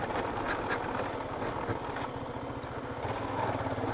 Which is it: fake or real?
real